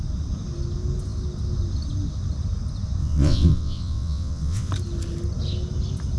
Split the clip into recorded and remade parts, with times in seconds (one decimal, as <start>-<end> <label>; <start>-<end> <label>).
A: 0.0-3.0 recorded; 3.0-4.7 remade; 4.7-6.2 recorded